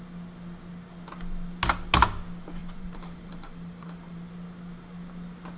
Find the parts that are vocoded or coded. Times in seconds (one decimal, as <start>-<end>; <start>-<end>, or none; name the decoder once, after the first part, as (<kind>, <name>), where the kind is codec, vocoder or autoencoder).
2.6-4.3 (vocoder, BigVGAN v2)